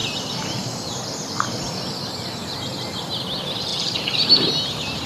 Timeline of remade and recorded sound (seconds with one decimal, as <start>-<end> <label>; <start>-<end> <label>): 0.0-1.6 remade; 1.6-3.7 recorded; 3.7-4.5 remade; 4.5-5.1 recorded